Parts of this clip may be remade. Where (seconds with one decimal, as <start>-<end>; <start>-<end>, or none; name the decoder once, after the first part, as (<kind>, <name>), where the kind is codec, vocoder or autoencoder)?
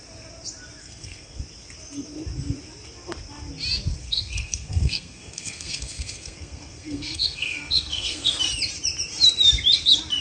0.8-1.4 (codec, SNAC); 4.0-8.4